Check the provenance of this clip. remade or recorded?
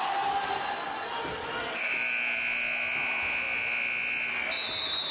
recorded